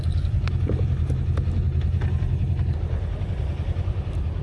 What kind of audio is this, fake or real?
real